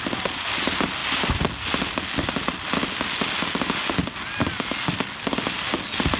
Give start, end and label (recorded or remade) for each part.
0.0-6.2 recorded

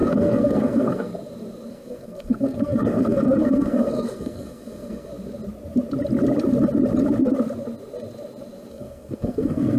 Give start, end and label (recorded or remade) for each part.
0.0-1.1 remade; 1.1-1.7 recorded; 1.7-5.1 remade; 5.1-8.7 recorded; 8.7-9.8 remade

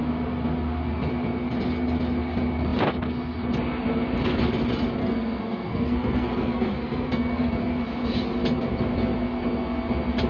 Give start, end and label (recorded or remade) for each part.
0.0-5.0 recorded; 5.0-7.5 remade; 7.5-10.3 recorded

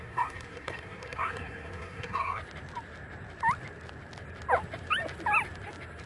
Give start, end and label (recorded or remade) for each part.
0.0-2.4 remade; 2.4-6.1 recorded

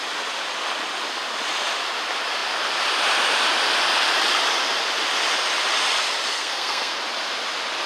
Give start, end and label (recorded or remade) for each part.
0.0-6.3 recorded; 6.3-7.0 remade; 7.0-7.9 recorded

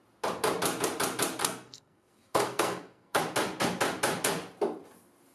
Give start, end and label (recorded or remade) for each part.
0.0-1.4 recorded; 1.4-3.2 remade; 3.2-5.3 recorded